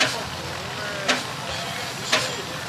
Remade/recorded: recorded